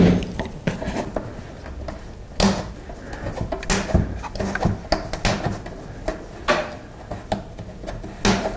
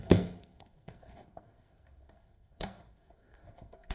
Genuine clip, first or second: first